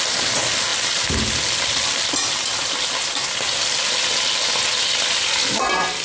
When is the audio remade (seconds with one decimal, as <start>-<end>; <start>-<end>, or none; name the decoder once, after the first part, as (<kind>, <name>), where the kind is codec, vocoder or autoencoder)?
none